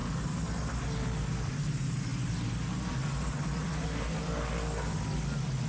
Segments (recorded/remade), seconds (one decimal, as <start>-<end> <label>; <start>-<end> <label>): 0.0-5.7 recorded